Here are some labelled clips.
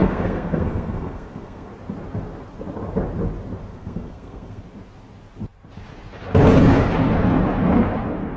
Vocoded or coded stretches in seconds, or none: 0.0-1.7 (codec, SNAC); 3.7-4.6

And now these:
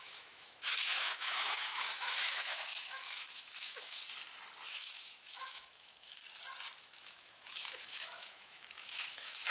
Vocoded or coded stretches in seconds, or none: 0.0-4.0 (autoencoder, DAC-VAE); 4.7-6.2; 6.8-9.5

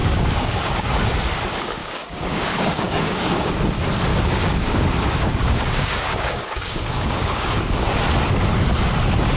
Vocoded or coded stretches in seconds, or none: 0.0-1.2 (codec, DAC); 1.8-3.5; 4.1-7.6

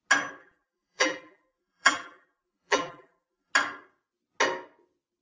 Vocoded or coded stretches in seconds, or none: 0.4-3.5 (vocoder, BigVGAN v2)

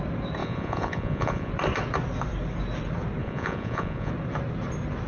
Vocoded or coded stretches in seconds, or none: 0.4-1.5 (vocoder, Vocos); 3.2-4.1